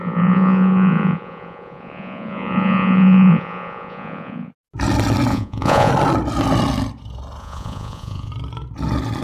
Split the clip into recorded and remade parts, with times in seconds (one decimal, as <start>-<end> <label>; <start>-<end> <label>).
0.0-4.5 remade; 4.5-5.3 recorded; 5.3-5.9 remade; 5.9-7.4 recorded; 7.4-8.3 remade; 8.3-9.2 recorded